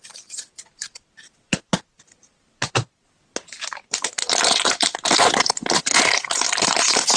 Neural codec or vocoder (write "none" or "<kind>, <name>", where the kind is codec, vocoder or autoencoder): vocoder, BigVGAN v2